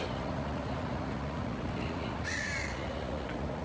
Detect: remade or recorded remade